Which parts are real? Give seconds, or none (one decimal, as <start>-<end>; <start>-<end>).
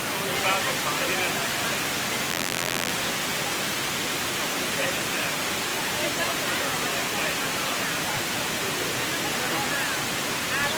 0.0-2.3; 2.9-10.8